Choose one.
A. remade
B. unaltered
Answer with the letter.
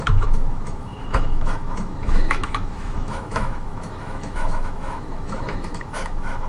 A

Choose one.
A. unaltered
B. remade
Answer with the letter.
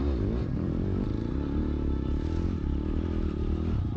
A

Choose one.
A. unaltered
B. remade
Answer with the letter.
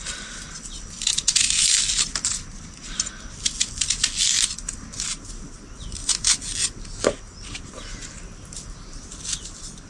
A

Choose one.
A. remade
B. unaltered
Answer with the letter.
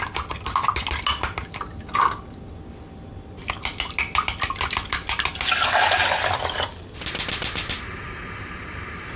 B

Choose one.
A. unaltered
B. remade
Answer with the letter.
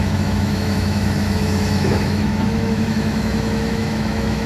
B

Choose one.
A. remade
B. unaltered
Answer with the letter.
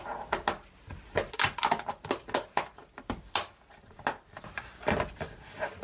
B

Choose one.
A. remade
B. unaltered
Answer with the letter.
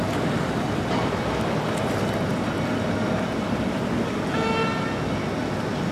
B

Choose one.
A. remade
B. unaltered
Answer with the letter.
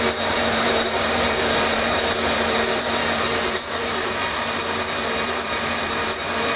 A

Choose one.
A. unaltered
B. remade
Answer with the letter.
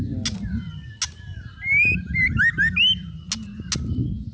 A